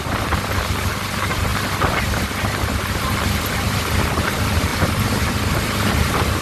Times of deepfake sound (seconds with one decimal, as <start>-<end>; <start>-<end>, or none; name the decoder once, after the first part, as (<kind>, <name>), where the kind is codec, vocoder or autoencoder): none